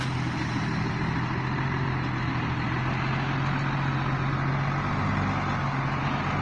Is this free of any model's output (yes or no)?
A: yes